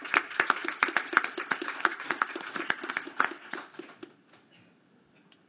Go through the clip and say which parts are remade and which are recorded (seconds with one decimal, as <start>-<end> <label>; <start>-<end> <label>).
0.0-0.6 recorded; 0.6-1.5 remade; 1.5-1.9 recorded; 1.9-2.9 remade; 2.9-5.5 recorded